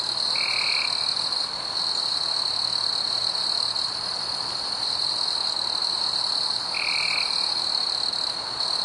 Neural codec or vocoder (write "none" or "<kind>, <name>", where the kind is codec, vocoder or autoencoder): none